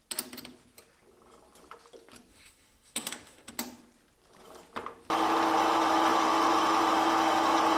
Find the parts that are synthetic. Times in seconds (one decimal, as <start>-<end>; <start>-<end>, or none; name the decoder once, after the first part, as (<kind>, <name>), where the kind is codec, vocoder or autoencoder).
2.3-3.5 (autoencoder, DAC-VAE)